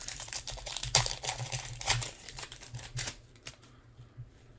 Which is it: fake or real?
fake